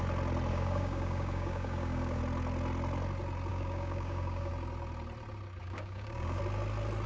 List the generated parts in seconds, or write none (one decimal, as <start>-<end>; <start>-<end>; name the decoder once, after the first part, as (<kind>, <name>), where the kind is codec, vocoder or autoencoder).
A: 0.5-2.2 (codec, DAC); 3.5-4.5; 5.6-6.4